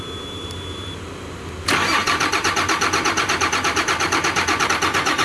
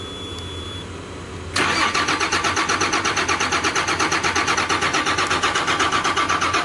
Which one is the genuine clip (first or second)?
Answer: second